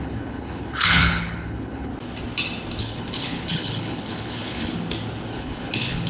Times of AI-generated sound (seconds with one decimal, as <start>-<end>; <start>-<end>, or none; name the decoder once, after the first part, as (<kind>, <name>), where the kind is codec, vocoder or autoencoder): 0.0-1.9 (codec, HILCodec); 2.8-4.7; 5.3-6.1